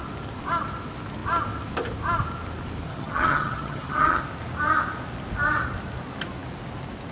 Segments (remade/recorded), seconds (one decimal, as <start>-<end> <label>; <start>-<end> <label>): 0.0-2.9 recorded; 2.9-4.2 remade; 4.2-7.1 recorded